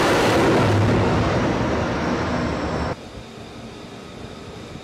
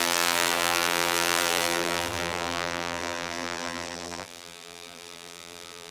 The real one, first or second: first